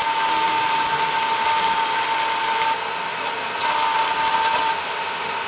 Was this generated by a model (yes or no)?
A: no